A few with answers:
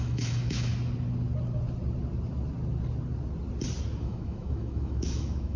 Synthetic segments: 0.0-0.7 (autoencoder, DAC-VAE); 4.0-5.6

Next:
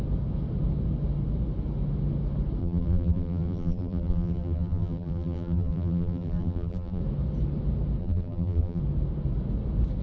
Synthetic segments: 2.6-7.0 (vocoder, BigVGAN v2); 8.0-8.8

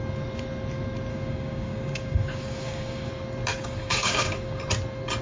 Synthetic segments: 1.1-3.1 (codec, DAC); 3.5-4.6

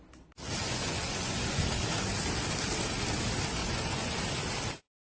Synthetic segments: 0.6-1.7 (vocoder, Vocos); 3.6-4.2

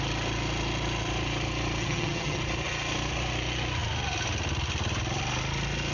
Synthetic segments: 1.8-2.4 (vocoder, HiFi-GAN)

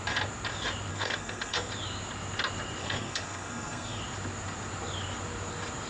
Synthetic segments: 0.9-1.7 (codec, SNAC); 2.8-4.0

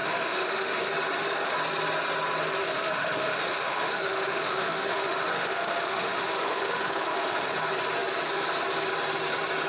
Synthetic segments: 0.0-0.9 (autoencoder, DAC-VAE); 2.6-7.6

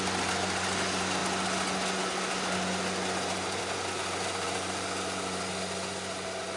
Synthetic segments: none